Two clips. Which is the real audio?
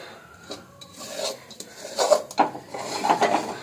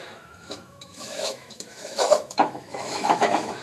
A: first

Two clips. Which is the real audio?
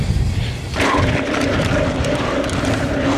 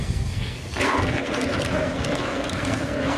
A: first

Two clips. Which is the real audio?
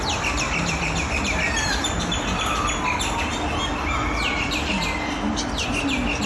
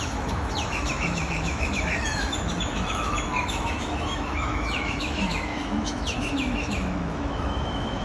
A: first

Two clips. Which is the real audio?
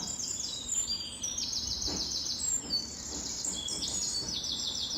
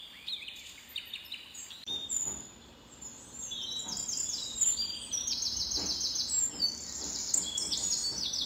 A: second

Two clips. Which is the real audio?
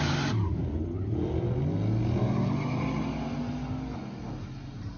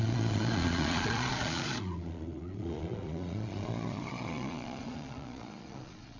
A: first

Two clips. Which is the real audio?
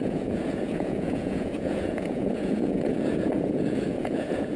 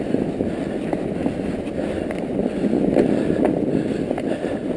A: second